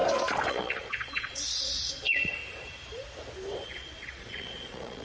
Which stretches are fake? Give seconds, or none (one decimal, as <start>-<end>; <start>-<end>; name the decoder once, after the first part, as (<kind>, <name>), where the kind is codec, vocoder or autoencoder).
0.5-2.4 (vocoder, Vocos); 3.6-5.0